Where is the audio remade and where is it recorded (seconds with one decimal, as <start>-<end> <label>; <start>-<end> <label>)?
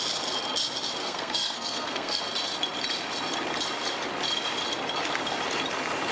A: 0.0-1.0 recorded; 1.0-2.2 remade; 2.2-6.1 recorded